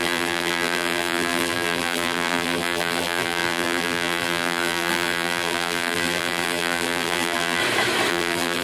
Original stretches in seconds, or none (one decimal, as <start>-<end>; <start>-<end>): 7.6-8.1